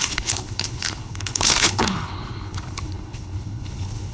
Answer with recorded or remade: remade